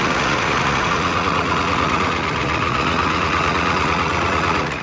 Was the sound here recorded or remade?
remade